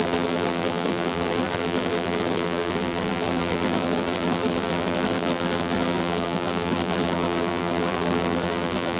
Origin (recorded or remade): remade